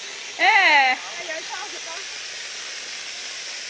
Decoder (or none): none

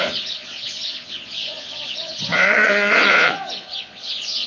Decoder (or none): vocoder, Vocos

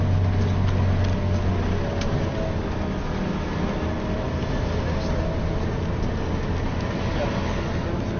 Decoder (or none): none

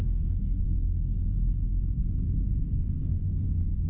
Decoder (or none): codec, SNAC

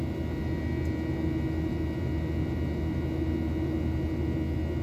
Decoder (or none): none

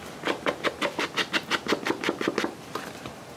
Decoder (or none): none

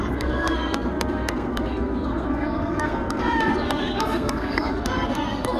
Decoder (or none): codec, SNAC